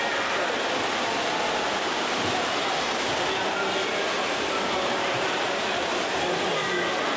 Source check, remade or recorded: recorded